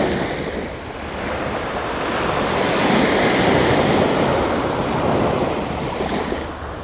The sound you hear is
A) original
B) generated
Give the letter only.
A